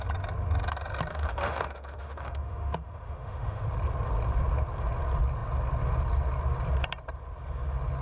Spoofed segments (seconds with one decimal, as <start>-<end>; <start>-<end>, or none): 1.1-3.6

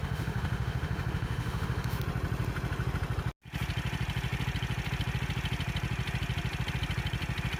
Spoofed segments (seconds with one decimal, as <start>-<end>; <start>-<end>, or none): 0.0-2.0

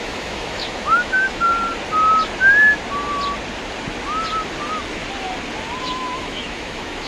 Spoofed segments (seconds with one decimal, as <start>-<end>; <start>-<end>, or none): 0.0-1.5; 5.8-7.1

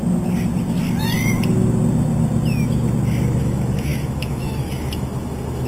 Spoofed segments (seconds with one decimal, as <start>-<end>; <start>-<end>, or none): 3.4-5.7

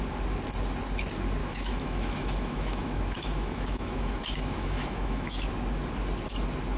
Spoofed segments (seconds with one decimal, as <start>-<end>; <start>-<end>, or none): 1.4-5.5

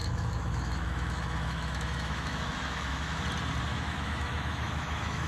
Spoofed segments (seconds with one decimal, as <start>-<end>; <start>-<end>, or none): 0.0-3.2; 3.7-5.3

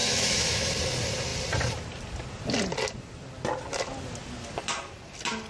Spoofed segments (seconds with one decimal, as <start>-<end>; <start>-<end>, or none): 0.0-0.7

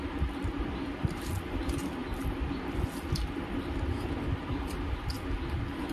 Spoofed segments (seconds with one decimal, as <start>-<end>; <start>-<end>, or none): none